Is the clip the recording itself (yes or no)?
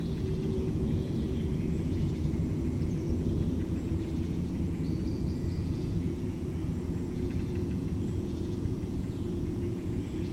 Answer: no